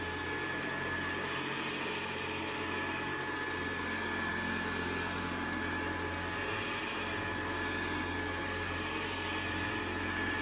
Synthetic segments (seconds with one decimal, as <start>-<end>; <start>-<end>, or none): none